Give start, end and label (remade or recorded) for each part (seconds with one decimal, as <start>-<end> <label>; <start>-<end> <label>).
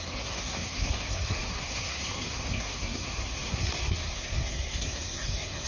0.0-5.7 remade